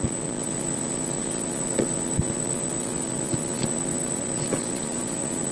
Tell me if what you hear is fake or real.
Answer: fake